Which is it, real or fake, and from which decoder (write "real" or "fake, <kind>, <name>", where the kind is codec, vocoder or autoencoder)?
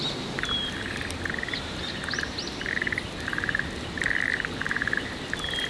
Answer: real